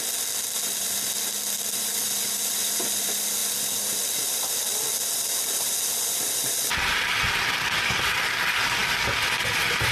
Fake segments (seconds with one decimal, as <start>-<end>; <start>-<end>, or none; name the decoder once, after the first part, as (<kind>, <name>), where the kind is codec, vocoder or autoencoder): none